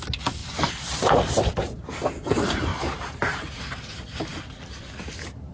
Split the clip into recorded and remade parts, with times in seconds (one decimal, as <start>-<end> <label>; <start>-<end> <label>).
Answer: 0.0-0.4 recorded; 0.4-1.5 remade; 1.5-2.7 recorded; 2.7-3.6 remade; 3.6-5.5 recorded